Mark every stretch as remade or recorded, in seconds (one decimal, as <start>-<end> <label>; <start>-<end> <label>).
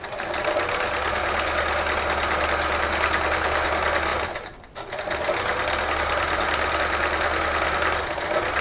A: 0.0-8.6 recorded